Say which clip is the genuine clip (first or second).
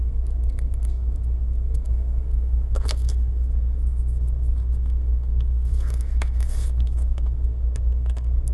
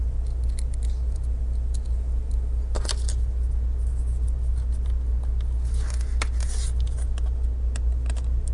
second